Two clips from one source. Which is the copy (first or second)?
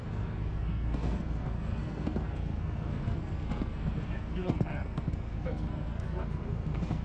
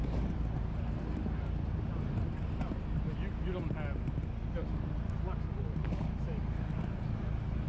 first